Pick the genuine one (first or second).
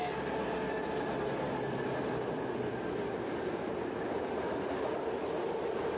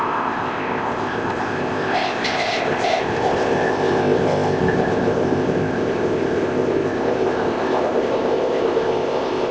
first